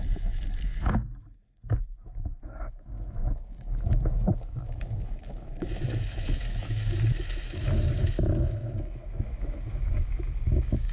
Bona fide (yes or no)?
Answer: no